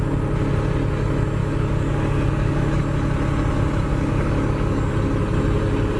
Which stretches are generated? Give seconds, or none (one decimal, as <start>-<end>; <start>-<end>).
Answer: 1.4-2.8; 3.9-4.9